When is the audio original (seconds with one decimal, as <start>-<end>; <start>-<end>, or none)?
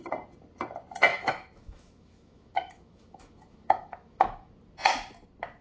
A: 0.0-1.1; 4.5-5.6